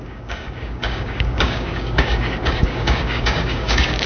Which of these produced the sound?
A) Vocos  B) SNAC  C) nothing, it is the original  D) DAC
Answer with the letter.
D